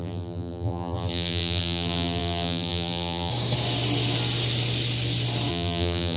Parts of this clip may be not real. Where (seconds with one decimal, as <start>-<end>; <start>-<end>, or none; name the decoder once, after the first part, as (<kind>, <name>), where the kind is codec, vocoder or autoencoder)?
0.0-3.3 (vocoder, BigVGAN v2); 5.5-6.2